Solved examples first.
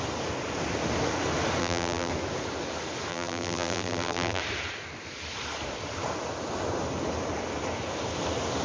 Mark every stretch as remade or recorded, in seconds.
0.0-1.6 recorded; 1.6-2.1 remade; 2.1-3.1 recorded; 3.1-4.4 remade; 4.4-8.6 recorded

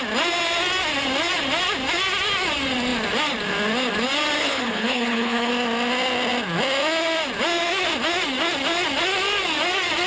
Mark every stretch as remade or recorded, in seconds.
0.0-4.4 recorded; 4.4-5.5 remade; 5.5-10.1 recorded

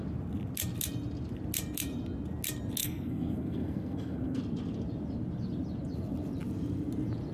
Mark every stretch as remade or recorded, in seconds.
0.0-2.8 recorded; 2.8-4.4 remade; 4.4-7.3 recorded

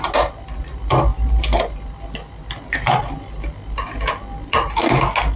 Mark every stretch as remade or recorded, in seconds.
0.0-5.4 recorded

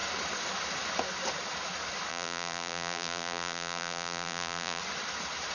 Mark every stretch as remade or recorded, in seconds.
0.0-2.1 recorded; 2.1-4.8 remade; 4.8-5.5 recorded